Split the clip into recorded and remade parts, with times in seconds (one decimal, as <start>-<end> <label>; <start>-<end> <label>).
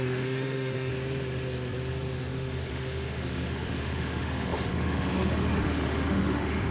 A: 0.0-0.9 remade; 0.9-2.2 recorded; 2.2-6.7 remade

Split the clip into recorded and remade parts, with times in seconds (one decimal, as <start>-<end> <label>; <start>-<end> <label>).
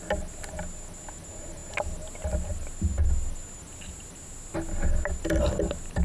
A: 0.0-6.0 recorded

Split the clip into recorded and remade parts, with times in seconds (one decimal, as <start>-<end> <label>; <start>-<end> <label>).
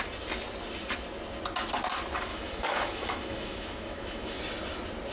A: 0.0-2.3 recorded; 2.3-4.4 remade; 4.4-5.1 recorded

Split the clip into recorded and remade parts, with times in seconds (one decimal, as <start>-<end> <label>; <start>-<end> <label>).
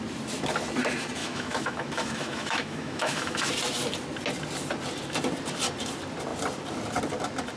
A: 0.0-1.2 recorded; 1.2-3.5 remade; 3.5-7.6 recorded